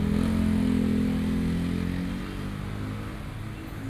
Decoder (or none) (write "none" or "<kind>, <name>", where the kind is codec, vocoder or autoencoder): none